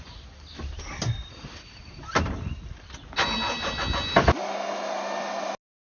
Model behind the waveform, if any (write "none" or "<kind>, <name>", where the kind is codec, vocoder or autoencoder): none